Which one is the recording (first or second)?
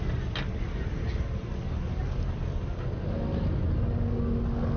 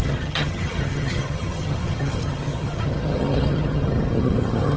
first